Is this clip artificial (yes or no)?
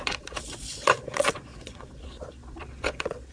yes